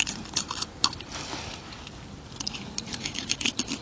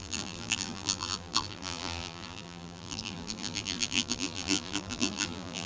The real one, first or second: first